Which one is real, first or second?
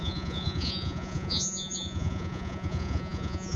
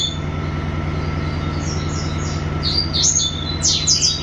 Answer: second